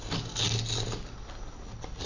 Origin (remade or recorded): recorded